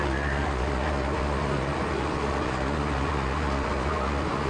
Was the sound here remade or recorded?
remade